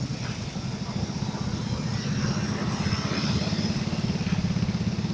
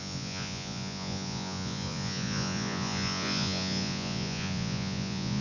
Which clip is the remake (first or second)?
second